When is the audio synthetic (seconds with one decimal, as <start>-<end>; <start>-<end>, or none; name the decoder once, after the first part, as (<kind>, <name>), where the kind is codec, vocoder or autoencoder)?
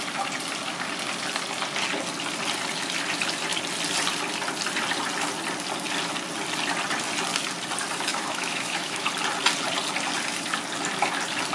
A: 8.1-9.1 (autoencoder, DAC-VAE)